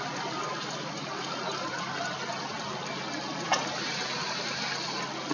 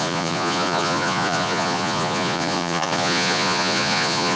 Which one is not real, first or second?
second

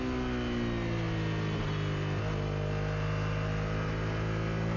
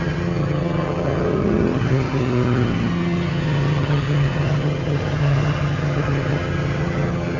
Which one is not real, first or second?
second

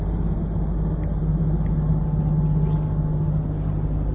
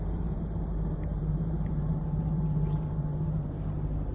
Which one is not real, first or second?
second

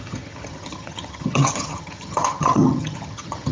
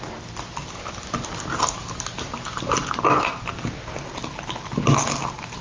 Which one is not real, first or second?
first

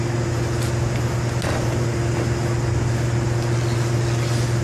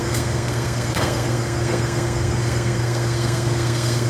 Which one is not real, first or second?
second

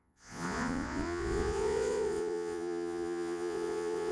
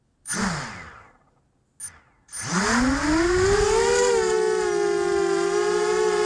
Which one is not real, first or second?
first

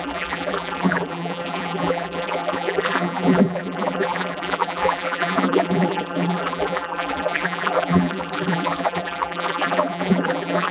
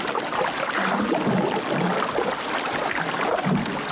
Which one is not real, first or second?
first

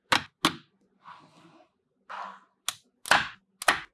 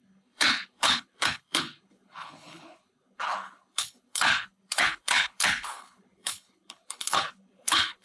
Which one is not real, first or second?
second